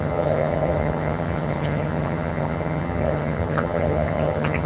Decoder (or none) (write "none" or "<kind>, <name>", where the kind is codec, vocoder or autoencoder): vocoder, HiFi-GAN